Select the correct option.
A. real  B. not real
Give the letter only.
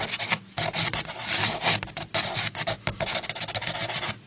A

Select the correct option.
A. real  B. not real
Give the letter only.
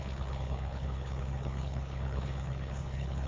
B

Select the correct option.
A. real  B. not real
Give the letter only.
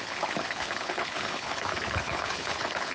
B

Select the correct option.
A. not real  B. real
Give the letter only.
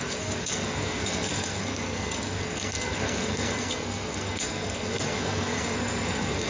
A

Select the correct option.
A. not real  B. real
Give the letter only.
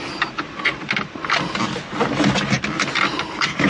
B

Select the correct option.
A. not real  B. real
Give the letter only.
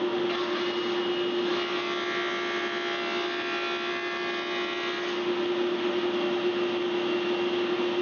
B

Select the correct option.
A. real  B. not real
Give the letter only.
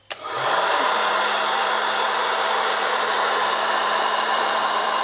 B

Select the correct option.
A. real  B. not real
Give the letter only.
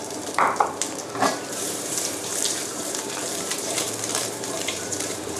B